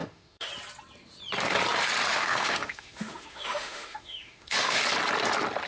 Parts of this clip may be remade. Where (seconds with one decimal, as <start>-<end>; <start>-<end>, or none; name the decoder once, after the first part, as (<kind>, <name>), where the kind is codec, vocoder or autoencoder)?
0.0-0.5 (autoencoder, DAC-VAE); 2.1-4.8